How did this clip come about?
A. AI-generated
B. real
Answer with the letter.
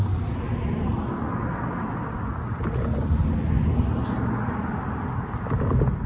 B